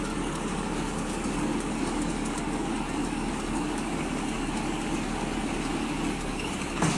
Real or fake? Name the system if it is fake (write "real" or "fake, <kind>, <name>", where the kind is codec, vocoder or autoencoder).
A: fake, codec, DAC